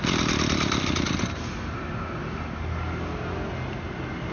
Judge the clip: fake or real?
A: real